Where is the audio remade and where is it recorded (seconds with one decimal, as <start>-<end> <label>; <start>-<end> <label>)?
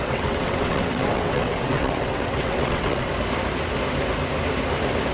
0.0-3.1 remade; 3.1-5.1 recorded